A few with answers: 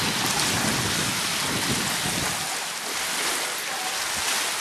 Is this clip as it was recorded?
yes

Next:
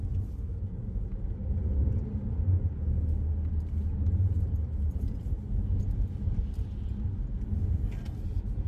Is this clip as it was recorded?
yes